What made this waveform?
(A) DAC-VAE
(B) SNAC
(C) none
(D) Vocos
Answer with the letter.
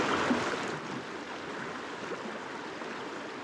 C